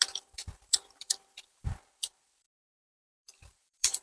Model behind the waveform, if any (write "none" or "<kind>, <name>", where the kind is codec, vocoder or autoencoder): vocoder, BigVGAN v2